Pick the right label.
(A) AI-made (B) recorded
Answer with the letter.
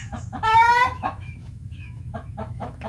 A